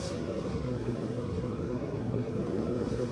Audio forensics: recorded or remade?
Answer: remade